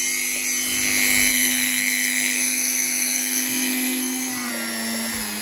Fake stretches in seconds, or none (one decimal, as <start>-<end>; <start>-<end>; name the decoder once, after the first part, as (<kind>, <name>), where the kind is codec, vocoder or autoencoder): 1.3-4.5 (codec, SNAC)